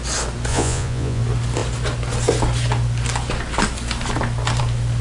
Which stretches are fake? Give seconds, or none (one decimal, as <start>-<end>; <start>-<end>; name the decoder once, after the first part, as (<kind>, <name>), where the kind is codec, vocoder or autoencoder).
0.5-1.2 (vocoder, Vocos)